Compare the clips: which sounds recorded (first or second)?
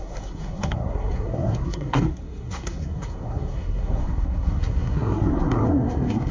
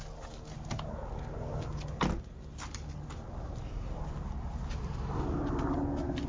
second